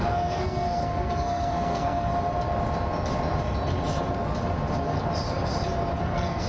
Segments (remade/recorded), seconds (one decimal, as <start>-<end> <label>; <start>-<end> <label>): 0.0-2.1 remade; 2.1-6.0 recorded; 6.0-6.5 remade